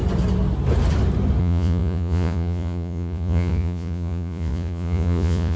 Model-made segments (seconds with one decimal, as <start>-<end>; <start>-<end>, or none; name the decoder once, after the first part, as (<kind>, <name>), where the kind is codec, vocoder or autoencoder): 1.4-5.6 (vocoder, Vocos)